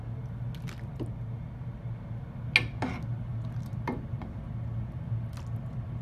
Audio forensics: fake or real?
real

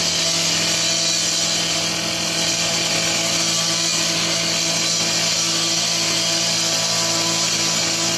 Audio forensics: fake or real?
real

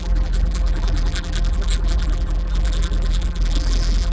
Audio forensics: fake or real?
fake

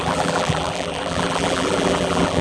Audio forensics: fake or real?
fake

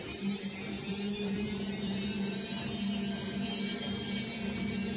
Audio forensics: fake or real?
fake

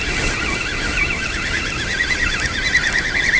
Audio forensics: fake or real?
real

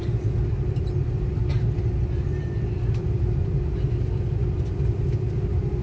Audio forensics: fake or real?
fake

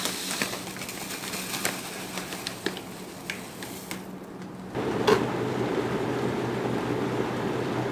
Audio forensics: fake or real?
real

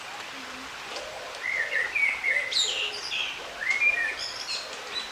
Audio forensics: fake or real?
real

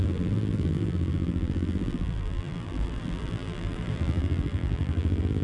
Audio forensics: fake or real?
fake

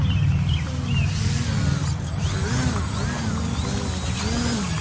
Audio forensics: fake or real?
real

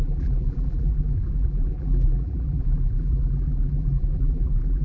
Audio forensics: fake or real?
fake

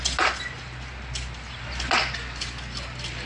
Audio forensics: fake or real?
real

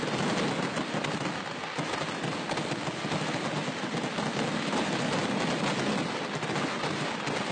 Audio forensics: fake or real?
real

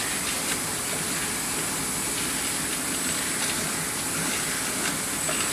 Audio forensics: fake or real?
real